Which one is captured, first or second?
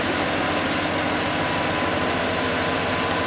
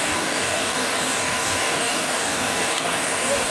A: first